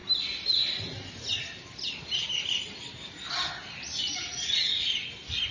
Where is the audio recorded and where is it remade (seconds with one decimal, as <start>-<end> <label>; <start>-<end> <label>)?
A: 0.0-5.5 recorded